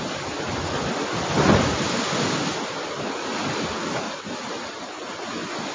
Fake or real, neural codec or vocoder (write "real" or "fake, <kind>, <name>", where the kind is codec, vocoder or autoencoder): real